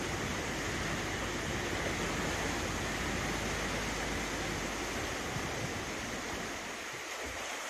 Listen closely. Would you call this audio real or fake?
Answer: real